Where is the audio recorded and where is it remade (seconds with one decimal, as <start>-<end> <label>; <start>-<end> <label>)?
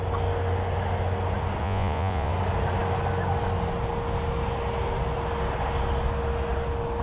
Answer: 0.0-1.6 recorded; 1.6-2.3 remade; 2.3-7.0 recorded